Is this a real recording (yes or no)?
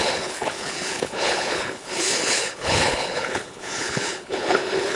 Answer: no